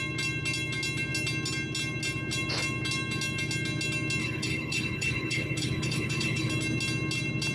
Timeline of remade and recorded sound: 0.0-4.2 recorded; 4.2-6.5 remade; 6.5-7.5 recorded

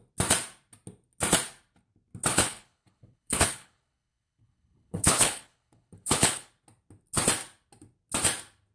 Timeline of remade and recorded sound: 0.0-2.3 recorded; 2.3-6.5 remade; 6.5-8.7 recorded

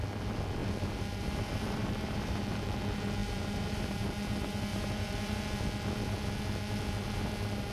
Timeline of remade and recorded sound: 0.0-0.6 recorded; 0.6-2.4 remade; 2.4-3.2 recorded; 3.2-4.1 remade; 4.1-4.7 recorded; 4.7-5.4 remade; 5.4-7.7 recorded